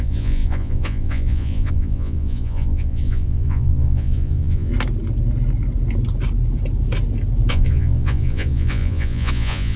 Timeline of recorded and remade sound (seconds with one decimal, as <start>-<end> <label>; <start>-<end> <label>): 0.0-4.7 remade; 4.7-7.5 recorded; 7.5-9.8 remade